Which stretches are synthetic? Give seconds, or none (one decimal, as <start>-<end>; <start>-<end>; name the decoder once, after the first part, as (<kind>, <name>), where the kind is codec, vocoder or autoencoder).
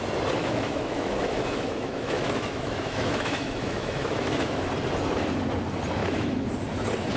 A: 0.4-4.7 (autoencoder, DAC-VAE); 6.0-6.5